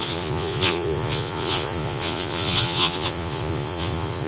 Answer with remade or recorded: remade